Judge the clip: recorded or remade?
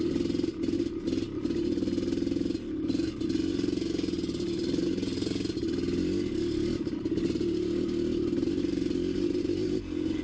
recorded